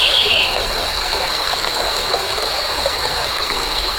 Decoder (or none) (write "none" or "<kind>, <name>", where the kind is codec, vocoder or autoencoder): codec, SNAC